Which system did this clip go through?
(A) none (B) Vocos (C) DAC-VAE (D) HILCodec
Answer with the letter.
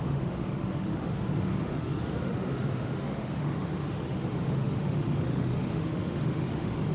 C